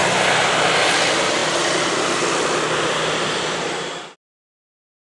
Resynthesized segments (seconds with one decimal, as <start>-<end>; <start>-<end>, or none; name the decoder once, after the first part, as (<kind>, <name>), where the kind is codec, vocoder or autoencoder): none